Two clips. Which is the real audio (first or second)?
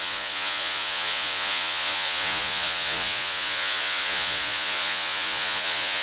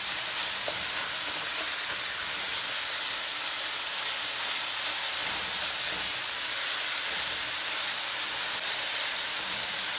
second